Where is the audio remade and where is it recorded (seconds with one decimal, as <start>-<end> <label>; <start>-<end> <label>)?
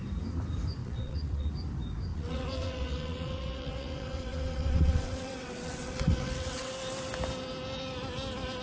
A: 0.0-0.8 recorded; 0.8-1.5 remade; 1.5-2.1 recorded; 2.1-6.7 remade; 6.7-8.6 recorded